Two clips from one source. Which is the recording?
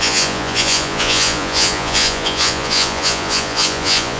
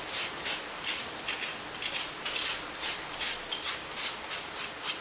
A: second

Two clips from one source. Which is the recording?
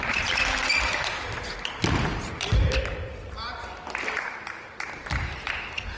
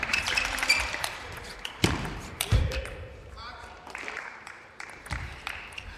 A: first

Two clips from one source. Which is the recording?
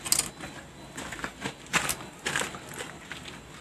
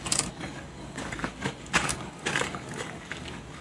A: first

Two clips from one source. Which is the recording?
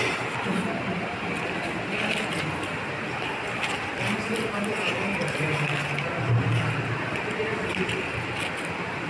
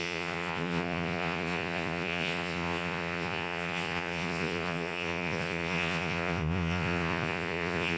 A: first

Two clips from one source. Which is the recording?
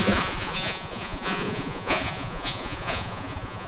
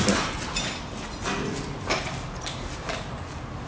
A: second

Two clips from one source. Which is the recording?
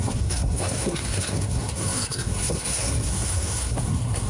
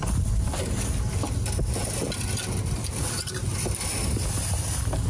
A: second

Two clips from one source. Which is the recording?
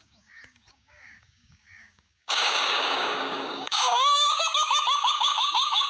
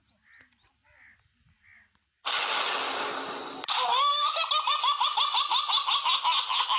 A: second